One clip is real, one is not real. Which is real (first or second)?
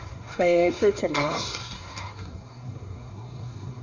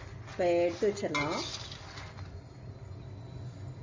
second